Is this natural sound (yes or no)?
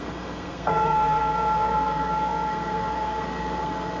no